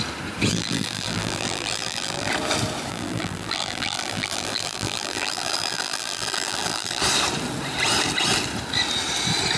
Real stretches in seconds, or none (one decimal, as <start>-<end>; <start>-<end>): 0.0-0.5; 2.3-2.9; 7.0-9.6